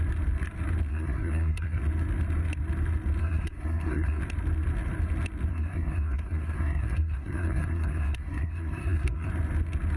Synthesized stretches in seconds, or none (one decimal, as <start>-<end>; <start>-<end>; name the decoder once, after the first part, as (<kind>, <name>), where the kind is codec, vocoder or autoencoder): 0.9-1.8 (codec, SNAC); 3.2-4.2; 5.5-9.3